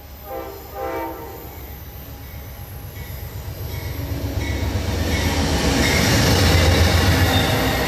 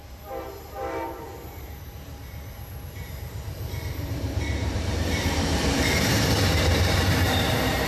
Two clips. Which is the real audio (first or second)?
first